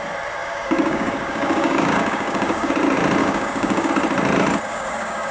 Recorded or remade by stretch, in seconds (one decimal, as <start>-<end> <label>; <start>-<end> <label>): 0.0-0.4 recorded; 0.4-2.7 remade; 2.7-3.2 recorded; 3.2-3.9 remade; 3.9-4.7 recorded; 4.7-5.3 remade